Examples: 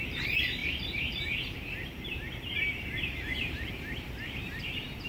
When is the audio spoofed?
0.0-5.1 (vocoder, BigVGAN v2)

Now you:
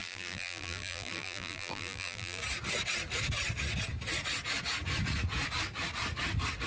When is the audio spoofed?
0.0-2.4 (vocoder, BigVGAN v2)

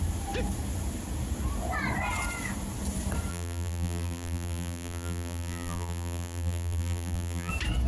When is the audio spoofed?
3.3-7.5 (vocoder, BigVGAN v2)

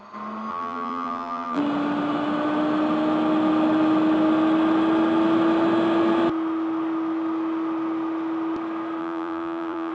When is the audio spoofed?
0.5-1.6 (vocoder, BigVGAN v2); 9.0-9.9